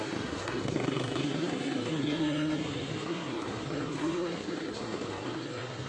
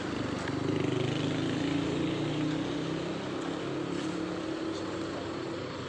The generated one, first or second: first